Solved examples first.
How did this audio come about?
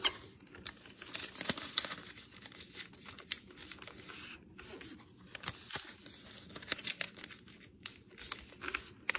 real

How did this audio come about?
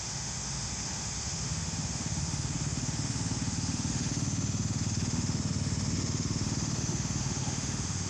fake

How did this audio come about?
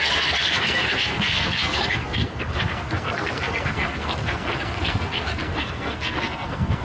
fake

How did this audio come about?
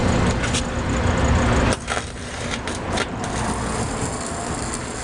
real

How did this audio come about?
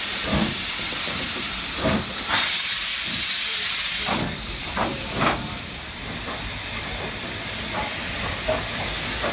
fake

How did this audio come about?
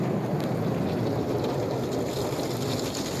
real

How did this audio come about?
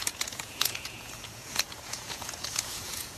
fake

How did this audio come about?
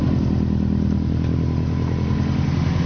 real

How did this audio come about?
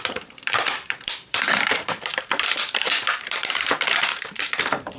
fake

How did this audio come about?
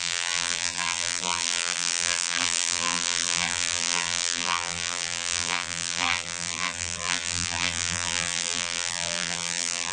fake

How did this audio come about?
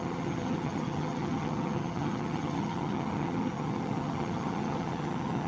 fake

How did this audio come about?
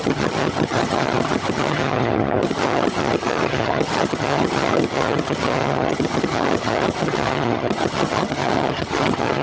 fake